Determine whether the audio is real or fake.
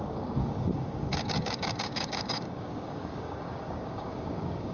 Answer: fake